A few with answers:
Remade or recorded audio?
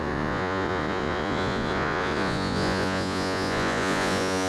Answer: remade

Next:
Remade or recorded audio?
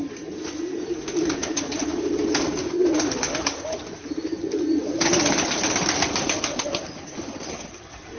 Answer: recorded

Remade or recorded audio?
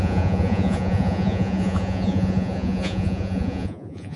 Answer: remade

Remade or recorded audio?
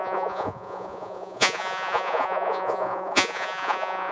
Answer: remade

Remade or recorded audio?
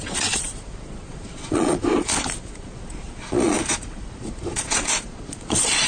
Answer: remade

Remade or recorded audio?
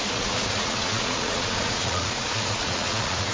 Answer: remade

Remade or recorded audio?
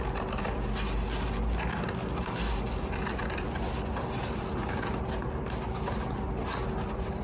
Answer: recorded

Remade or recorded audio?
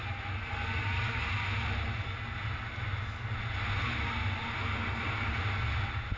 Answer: recorded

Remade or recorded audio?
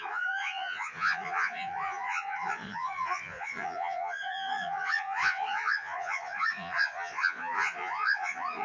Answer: remade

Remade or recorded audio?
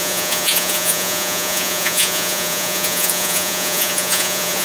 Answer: remade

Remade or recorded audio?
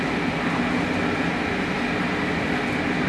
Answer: recorded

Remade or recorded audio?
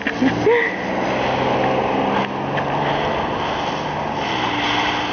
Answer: recorded